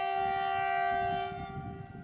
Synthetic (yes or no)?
no